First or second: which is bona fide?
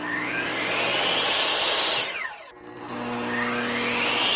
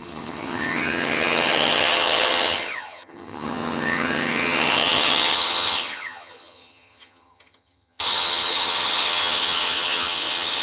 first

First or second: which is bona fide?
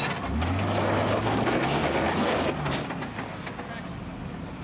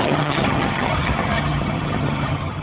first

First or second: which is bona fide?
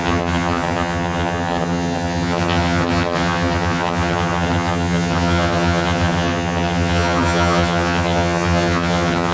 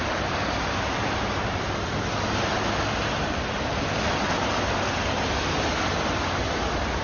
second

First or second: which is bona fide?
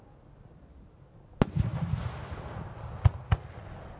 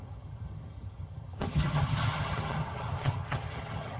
first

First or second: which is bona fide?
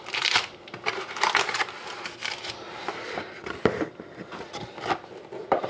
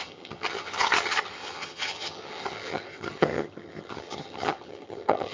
first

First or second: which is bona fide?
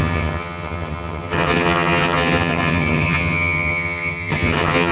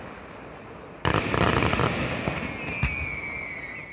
second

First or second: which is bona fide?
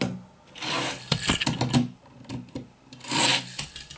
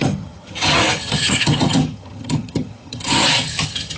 first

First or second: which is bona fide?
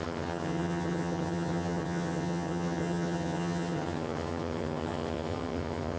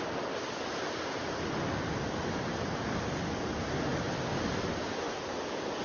second